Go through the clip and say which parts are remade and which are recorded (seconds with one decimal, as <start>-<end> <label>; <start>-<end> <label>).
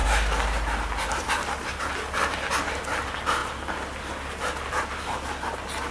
0.0-5.9 recorded